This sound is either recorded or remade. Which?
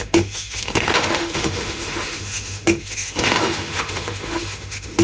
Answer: remade